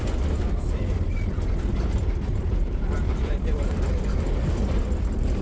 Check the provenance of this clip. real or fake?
fake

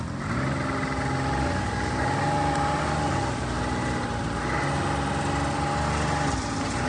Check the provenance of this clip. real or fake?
real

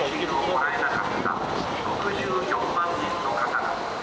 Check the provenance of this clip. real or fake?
real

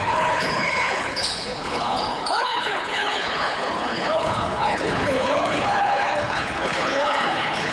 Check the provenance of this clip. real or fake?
fake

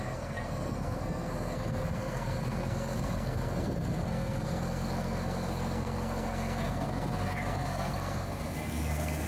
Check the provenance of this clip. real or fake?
fake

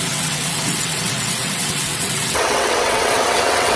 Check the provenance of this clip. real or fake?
fake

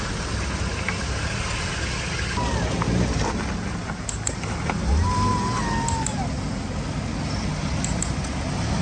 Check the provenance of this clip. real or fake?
real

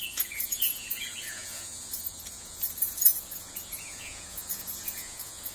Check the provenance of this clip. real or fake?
fake